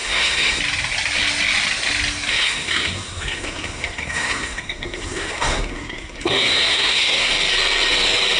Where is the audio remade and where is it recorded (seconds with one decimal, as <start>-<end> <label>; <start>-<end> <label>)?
0.0-0.6 remade; 0.6-2.3 recorded; 2.3-7.3 remade; 7.3-8.4 recorded